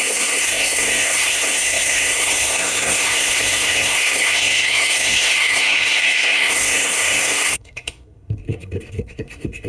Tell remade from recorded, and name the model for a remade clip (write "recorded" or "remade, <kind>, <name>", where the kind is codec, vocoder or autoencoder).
remade, codec, SNAC